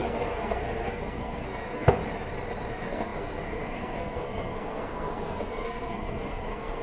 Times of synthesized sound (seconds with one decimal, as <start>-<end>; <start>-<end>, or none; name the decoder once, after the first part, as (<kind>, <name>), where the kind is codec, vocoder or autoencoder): 0.0-2.0 (codec, SNAC); 2.7-6.8